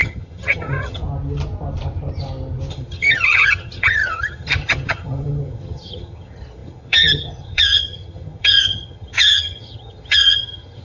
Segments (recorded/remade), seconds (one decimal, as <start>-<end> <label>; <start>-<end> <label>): 0.0-1.0 remade; 1.0-2.7 recorded; 2.7-10.8 remade